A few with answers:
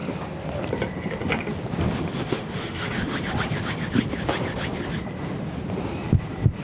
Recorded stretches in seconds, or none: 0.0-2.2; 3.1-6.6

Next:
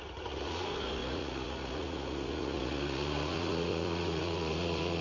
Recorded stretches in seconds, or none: none

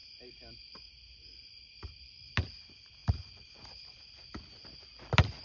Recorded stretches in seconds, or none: 0.0-5.4

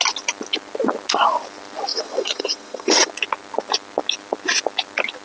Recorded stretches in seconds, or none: 0.0-1.9; 3.1-5.2

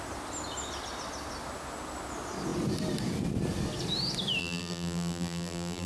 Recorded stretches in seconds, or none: 0.0-4.4

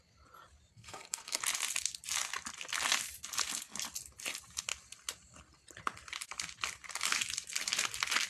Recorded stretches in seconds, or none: 0.0-0.7; 1.4-8.3

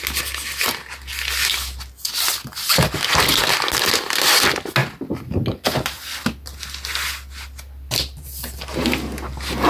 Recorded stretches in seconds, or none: 0.0-9.7

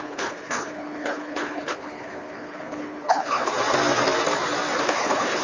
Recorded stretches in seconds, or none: 3.5-4.8